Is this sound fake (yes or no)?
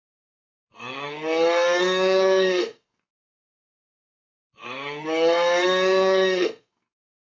yes